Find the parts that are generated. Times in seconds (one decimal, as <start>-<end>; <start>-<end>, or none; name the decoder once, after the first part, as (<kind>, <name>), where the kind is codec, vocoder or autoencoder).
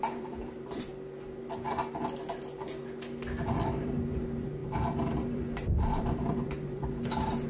0.0-0.9 (vocoder, BigVGAN v2); 3.7-4.6; 5.3-7.5